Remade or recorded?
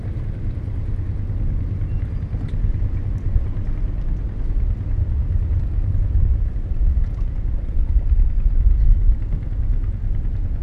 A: recorded